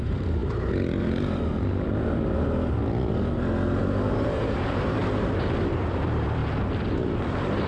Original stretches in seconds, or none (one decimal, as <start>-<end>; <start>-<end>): 0.4-3.8; 5.0-5.6; 6.4-7.2